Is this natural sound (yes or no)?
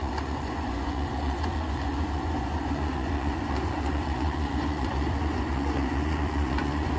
no